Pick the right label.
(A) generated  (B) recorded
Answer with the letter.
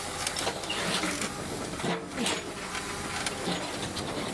B